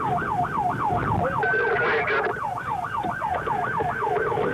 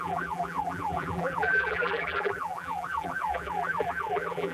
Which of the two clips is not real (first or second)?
second